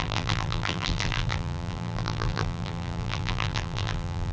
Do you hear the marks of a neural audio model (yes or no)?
yes